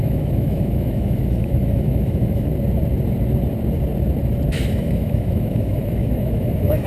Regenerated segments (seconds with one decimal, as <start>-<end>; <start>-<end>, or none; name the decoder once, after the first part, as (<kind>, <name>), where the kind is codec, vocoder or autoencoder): 0.0-2.5 (autoencoder, DAC-VAE); 4.5-6.9